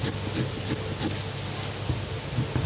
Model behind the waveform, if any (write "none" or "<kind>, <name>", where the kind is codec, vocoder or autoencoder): none